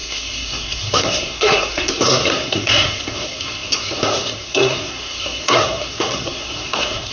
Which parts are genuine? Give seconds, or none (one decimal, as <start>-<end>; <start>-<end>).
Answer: none